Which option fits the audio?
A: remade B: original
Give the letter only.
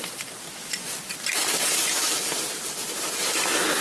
B